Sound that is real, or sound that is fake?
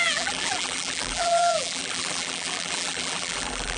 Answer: fake